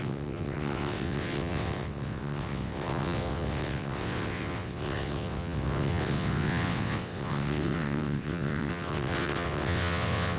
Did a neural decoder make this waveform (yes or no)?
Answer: yes